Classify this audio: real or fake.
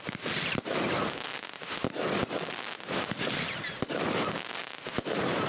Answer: real